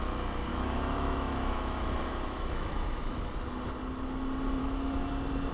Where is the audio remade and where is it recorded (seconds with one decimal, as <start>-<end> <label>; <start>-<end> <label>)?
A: 0.0-0.5 recorded; 0.5-3.2 remade; 3.2-4.6 recorded; 4.6-5.1 remade; 5.1-5.5 recorded

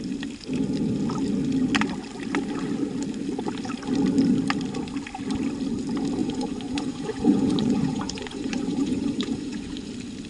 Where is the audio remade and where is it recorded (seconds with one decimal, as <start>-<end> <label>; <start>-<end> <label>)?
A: 0.0-6.2 recorded; 6.2-9.9 remade; 9.9-10.3 recorded

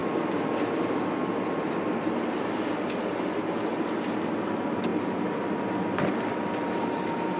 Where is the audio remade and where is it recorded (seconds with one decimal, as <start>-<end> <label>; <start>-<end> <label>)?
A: 0.0-7.4 recorded

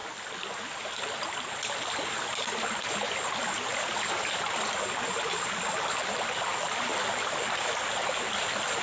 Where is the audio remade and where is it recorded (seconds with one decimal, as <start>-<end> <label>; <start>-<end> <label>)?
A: 0.0-8.8 recorded

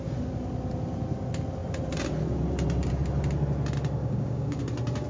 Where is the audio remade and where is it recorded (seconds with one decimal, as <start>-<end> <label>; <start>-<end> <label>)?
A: 0.0-4.0 recorded; 4.0-4.6 remade; 4.6-5.1 recorded

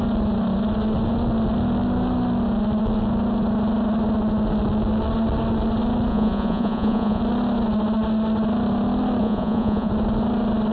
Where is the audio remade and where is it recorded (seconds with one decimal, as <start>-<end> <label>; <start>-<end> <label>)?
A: 0.0-6.1 recorded; 6.1-7.2 remade; 7.2-9.2 recorded; 9.2-9.9 remade; 9.9-10.7 recorded

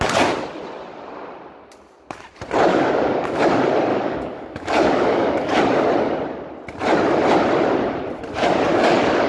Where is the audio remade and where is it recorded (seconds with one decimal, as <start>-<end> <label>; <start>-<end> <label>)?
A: 0.0-2.7 recorded; 2.7-3.4 remade; 3.4-3.9 recorded; 3.9-5.6 remade; 5.6-8.7 recorded; 8.7-9.3 remade

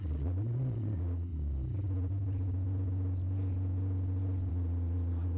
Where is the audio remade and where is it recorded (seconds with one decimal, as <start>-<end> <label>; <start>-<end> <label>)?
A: 0.0-1.3 remade; 1.3-4.5 recorded; 4.5-5.4 remade